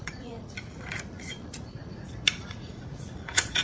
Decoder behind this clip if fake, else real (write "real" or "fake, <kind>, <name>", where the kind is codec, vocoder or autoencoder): fake, vocoder, Vocos